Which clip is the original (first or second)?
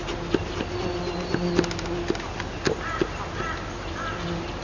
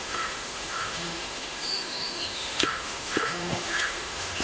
first